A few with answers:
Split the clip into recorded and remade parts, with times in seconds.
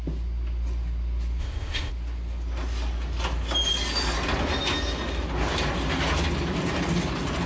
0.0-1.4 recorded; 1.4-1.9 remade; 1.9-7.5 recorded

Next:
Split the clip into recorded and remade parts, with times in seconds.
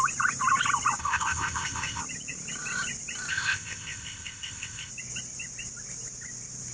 0.0-1.0 recorded; 1.0-2.0 remade; 2.0-3.3 recorded; 3.3-4.9 remade; 4.9-6.7 recorded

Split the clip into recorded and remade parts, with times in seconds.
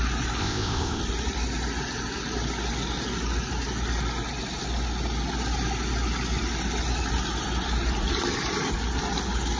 0.0-0.4 recorded; 0.4-1.0 remade; 1.0-9.6 recorded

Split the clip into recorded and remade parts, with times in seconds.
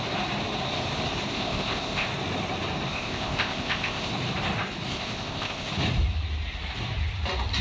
0.0-1.3 recorded; 1.3-2.1 remade; 2.1-2.9 recorded; 2.9-4.1 remade; 4.1-4.9 recorded; 4.9-5.7 remade; 5.7-7.6 recorded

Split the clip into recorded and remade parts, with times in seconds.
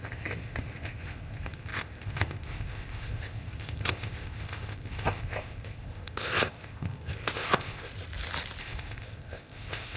0.0-7.9 remade; 7.9-8.6 recorded; 8.6-10.0 remade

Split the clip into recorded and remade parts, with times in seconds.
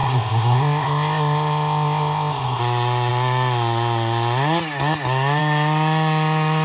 0.0-2.6 remade; 2.6-6.6 recorded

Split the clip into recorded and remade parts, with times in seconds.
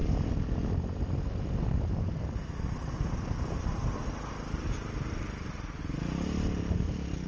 0.0-7.3 recorded